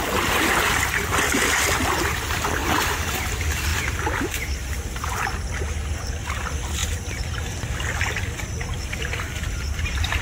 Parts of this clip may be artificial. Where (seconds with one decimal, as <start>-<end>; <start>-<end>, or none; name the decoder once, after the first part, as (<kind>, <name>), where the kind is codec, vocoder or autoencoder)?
2.6-3.2 (vocoder, BigVGAN v2); 6.8-7.5